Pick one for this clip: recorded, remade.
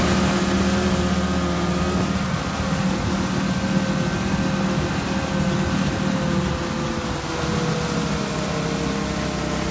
recorded